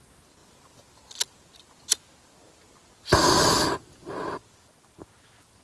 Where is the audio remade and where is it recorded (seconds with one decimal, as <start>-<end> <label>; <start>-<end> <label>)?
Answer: 0.0-5.6 recorded